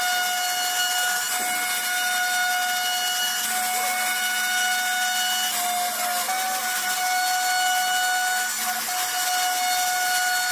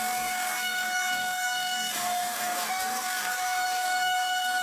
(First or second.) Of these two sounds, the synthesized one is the second